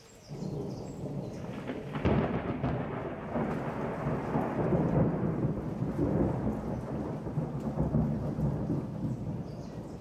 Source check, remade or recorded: recorded